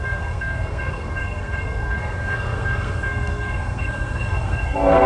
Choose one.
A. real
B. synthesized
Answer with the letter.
B